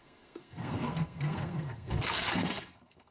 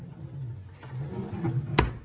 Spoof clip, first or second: first